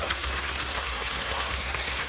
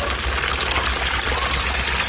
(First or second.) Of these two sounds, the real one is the second